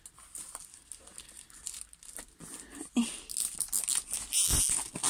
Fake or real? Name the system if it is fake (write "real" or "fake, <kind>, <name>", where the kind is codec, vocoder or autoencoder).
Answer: real